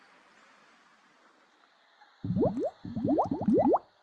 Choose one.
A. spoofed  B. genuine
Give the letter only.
B